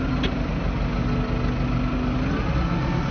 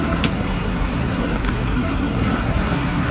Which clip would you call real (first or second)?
first